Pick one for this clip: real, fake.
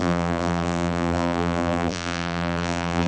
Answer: fake